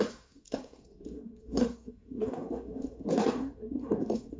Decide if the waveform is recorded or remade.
remade